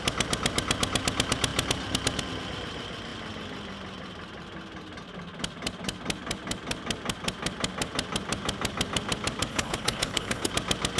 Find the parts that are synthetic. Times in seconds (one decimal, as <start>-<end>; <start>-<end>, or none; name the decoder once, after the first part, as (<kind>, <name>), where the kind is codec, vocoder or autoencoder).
9.5-10.5 (codec, HILCodec)